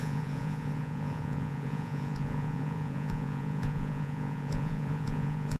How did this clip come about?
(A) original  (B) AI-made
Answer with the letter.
B